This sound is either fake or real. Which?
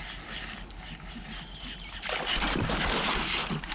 real